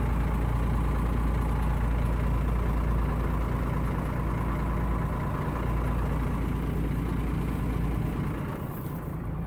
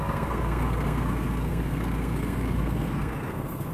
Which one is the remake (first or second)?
second